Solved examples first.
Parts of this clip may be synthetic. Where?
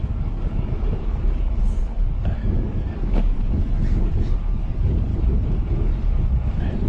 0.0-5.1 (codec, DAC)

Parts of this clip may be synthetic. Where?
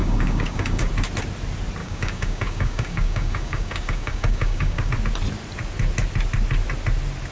0.0-0.9 (codec, DAC); 1.8-4.9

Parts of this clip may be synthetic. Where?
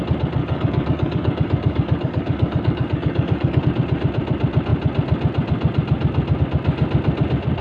0.4-3.6 (codec, DAC)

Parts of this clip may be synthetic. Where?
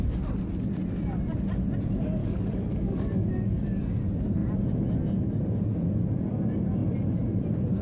2.2-3.8 (codec, DAC)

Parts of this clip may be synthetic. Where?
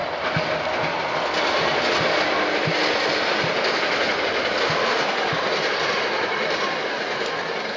none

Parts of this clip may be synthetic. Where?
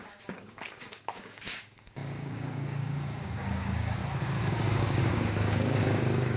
0.0-4.0 (codec, DAC); 4.5-6.4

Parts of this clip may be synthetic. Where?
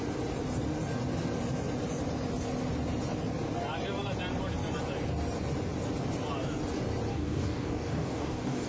7.1-8.7 (codec, DAC)